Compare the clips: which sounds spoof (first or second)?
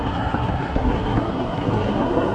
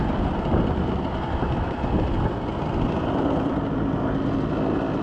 first